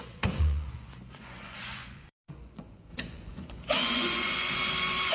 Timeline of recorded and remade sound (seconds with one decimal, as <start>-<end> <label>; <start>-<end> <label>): 0.0-5.1 remade